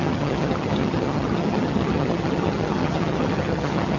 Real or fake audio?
fake